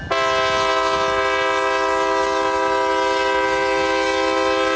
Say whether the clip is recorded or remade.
recorded